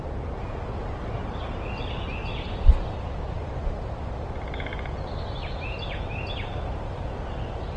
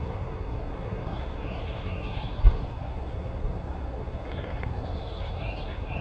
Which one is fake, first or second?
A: second